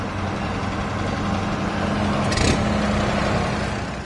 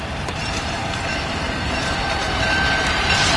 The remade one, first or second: second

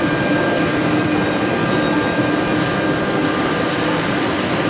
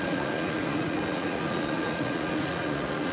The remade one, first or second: second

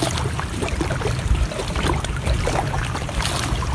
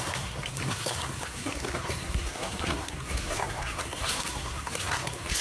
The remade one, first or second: second